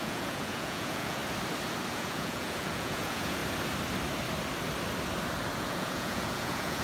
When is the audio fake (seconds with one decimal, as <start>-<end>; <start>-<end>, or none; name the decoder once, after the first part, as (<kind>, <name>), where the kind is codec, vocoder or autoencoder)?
0.0-1.2 (vocoder, Vocos); 1.9-3.4; 5.6-6.8